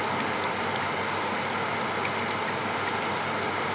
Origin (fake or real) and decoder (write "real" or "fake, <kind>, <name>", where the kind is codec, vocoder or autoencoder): real